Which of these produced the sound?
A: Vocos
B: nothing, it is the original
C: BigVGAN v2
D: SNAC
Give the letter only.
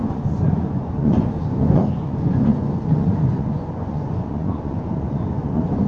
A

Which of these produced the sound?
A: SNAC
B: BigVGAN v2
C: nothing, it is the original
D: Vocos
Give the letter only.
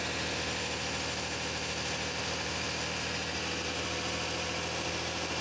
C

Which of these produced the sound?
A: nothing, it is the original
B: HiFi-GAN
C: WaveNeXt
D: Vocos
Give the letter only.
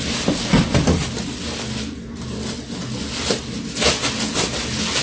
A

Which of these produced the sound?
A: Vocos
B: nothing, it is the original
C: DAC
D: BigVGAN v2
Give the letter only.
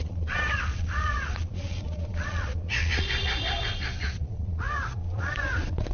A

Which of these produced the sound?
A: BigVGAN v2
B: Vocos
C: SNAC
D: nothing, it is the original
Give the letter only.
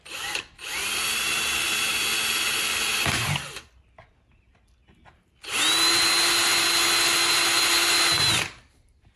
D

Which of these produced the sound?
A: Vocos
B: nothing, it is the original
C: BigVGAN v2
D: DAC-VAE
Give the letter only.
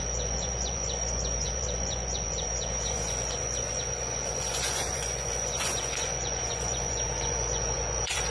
A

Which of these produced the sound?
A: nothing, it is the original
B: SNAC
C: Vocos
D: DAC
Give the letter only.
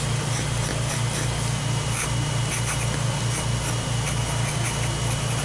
A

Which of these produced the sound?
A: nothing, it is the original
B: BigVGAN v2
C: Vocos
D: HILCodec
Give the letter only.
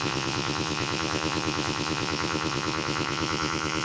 C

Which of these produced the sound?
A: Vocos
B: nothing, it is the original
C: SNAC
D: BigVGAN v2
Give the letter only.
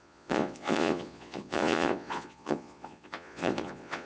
A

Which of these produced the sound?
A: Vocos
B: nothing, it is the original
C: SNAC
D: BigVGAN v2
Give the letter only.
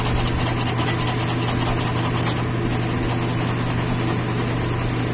B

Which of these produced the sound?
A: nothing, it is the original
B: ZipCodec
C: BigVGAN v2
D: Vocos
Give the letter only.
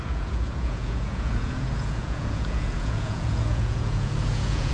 D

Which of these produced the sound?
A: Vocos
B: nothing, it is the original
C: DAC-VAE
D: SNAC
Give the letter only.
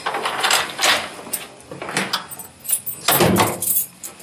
B